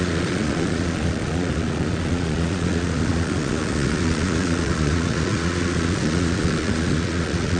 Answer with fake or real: fake